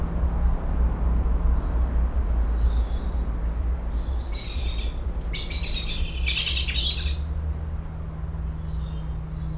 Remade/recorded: recorded